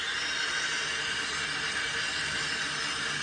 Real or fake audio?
real